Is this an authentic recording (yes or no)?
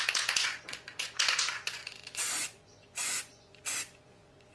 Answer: no